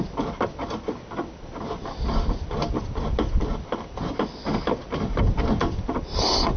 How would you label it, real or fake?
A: real